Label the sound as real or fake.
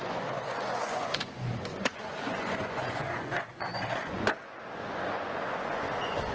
fake